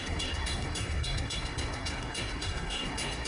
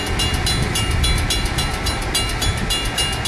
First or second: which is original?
second